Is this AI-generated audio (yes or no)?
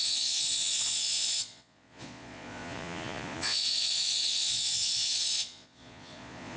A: yes